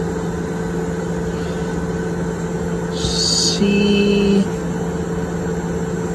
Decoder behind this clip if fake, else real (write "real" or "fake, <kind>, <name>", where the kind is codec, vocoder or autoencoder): real